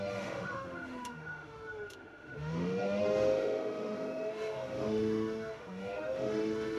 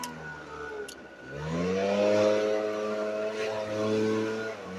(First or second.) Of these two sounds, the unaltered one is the second